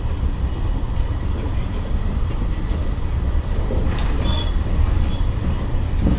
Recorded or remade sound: recorded